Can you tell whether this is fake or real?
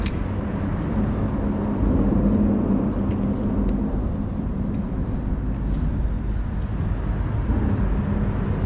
real